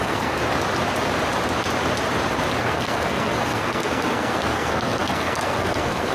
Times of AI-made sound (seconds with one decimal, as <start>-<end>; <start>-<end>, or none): 0.0-0.4; 2.6-6.1